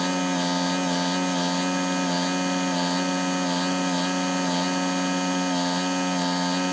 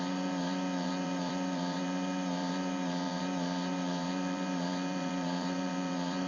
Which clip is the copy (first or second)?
second